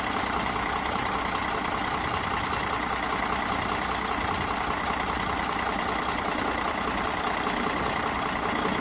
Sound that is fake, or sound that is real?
real